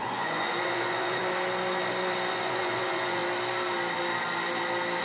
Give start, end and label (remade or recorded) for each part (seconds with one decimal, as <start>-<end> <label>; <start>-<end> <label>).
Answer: 0.0-1.2 remade; 1.2-2.3 recorded; 2.3-3.2 remade; 3.2-5.0 recorded